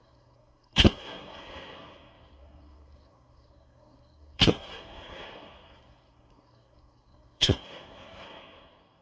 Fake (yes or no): yes